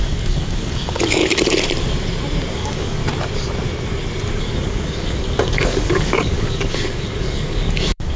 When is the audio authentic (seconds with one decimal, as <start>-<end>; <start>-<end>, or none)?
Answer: 1.2-2.5; 3.0-4.4